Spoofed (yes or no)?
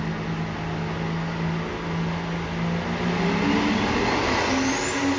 no